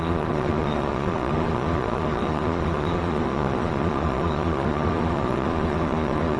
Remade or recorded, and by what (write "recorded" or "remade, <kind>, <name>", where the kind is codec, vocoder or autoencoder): remade, vocoder, Vocos